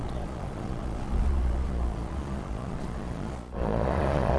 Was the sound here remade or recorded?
remade